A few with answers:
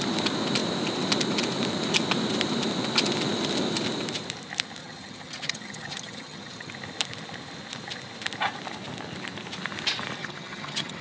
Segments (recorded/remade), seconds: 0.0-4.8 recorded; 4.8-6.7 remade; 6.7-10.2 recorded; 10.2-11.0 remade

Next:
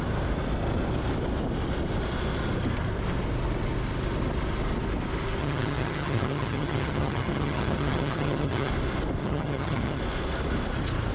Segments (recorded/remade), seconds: 0.0-5.4 recorded; 5.4-8.7 remade; 8.7-9.2 recorded; 9.2-10.0 remade; 10.0-11.1 recorded

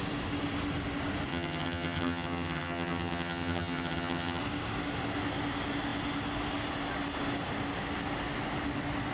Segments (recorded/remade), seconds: 0.0-1.3 recorded; 1.3-4.4 remade; 4.4-9.1 recorded